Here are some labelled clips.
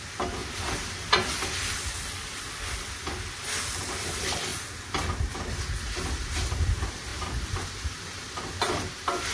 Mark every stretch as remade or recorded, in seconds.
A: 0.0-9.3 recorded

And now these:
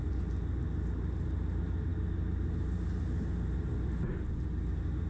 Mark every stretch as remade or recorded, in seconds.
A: 0.0-5.1 recorded